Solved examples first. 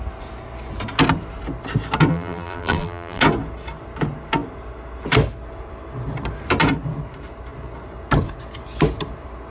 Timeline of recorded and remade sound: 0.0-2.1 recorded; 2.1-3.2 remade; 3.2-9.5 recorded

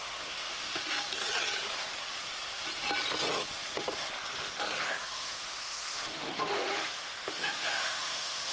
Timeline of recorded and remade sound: 0.0-0.8 remade; 0.8-4.8 recorded; 4.8-8.5 remade

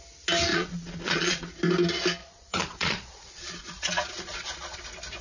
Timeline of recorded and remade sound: 0.0-0.5 recorded; 0.5-1.5 remade; 1.5-2.2 recorded; 2.2-4.8 remade; 4.8-5.2 recorded

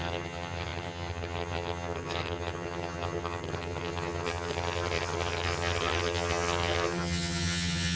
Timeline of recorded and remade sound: 0.0-8.0 remade